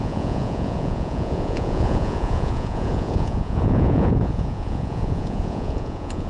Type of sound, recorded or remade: remade